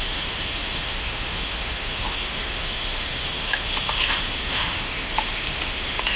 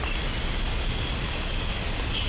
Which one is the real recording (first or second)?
second